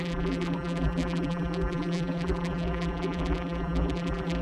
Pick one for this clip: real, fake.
fake